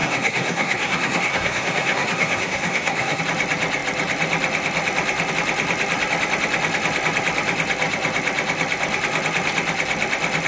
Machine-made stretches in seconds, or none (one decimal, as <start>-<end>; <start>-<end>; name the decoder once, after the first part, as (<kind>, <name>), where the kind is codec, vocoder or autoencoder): 0.0-3.2 (codec, SNAC)